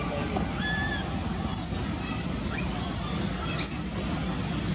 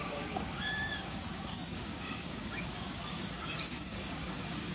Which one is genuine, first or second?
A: first